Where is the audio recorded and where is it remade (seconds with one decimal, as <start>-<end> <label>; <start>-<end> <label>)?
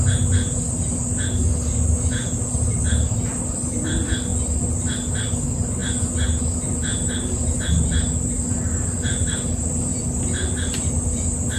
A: 0.0-6.9 recorded; 6.9-7.4 remade; 7.4-11.6 recorded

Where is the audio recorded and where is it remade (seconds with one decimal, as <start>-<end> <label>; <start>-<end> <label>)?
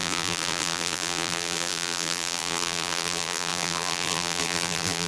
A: 0.0-5.1 remade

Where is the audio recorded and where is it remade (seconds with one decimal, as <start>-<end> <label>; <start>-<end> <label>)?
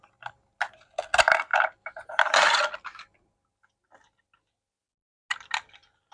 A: 0.0-1.5 recorded; 1.5-2.6 remade; 2.6-6.1 recorded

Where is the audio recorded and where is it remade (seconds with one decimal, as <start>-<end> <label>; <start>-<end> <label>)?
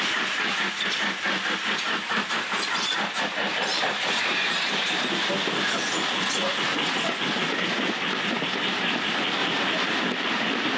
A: 0.0-3.7 recorded; 3.7-5.2 remade; 5.2-9.4 recorded; 9.4-10.0 remade; 10.0-10.8 recorded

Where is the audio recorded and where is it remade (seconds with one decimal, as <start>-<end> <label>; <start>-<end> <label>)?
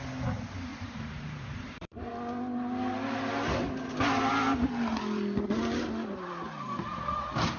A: 0.0-0.7 recorded; 0.7-2.1 remade; 2.1-7.6 recorded